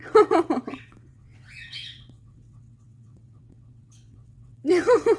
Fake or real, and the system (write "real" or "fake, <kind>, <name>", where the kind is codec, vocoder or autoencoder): fake, vocoder, WaveNeXt